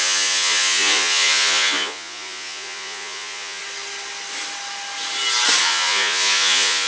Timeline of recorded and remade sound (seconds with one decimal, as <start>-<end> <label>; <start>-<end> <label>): 0.0-3.6 remade; 3.6-5.6 recorded; 5.6-6.9 remade

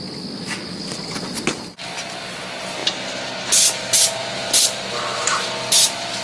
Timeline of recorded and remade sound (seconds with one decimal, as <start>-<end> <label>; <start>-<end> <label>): 0.0-6.2 recorded

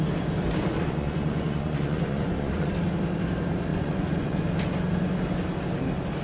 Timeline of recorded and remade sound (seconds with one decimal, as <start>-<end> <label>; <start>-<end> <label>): 0.0-0.7 recorded; 0.7-2.7 remade; 2.7-3.7 recorded; 3.7-4.4 remade; 4.4-6.2 recorded

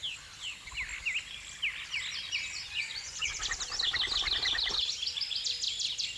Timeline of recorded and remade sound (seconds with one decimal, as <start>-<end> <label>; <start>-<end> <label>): 0.0-2.6 recorded; 2.6-3.4 remade; 3.4-6.2 recorded

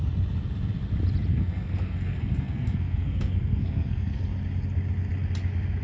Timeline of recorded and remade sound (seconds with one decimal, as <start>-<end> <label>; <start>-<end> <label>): 0.0-1.3 recorded; 1.3-4.2 remade; 4.2-5.8 recorded

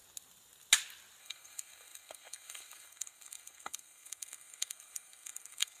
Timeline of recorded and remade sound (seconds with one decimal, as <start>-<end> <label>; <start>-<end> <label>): 0.0-1.2 recorded; 1.2-5.8 remade

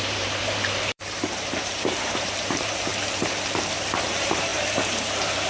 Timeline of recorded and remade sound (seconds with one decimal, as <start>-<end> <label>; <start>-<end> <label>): 0.0-2.9 remade; 2.9-4.1 recorded; 4.1-5.5 remade